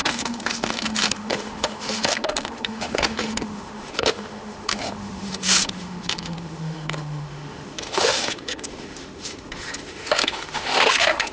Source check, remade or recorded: remade